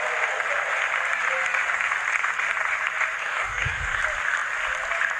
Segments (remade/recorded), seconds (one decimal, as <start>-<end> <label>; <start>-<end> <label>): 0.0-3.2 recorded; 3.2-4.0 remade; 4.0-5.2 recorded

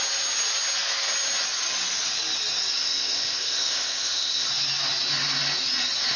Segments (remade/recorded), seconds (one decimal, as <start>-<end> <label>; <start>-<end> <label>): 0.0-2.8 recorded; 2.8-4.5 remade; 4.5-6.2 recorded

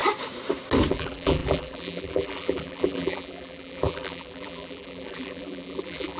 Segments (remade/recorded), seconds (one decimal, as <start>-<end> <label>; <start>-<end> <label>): 0.0-0.9 recorded; 0.9-6.2 remade